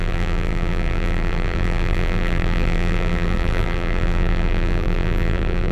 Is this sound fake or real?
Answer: fake